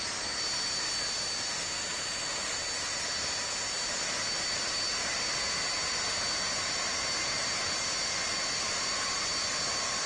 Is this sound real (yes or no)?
yes